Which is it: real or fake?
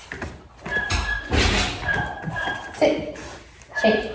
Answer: real